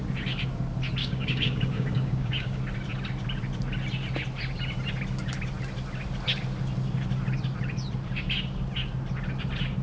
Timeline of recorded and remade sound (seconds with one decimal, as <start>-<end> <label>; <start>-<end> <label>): 0.0-1.0 recorded; 1.0-2.6 remade; 2.6-9.8 recorded